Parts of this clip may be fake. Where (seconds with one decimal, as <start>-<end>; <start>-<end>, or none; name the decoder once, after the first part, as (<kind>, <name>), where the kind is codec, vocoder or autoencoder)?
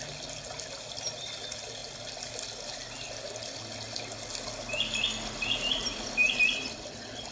none